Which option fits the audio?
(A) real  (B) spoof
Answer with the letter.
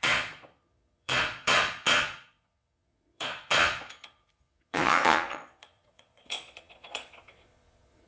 B